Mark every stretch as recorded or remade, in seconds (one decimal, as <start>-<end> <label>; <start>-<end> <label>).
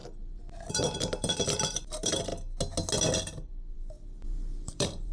0.0-2.3 remade; 2.3-3.7 recorded; 3.7-5.1 remade